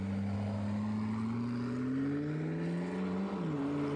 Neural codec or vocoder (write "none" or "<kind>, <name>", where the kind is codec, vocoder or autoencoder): none